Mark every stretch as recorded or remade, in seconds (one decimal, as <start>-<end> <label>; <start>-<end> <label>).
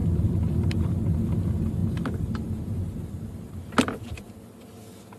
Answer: 0.0-1.2 remade; 1.2-1.8 recorded; 1.8-3.6 remade; 3.6-5.2 recorded